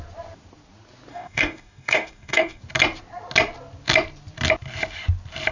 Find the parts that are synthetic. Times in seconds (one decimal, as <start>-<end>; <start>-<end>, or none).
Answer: 1.1-2.6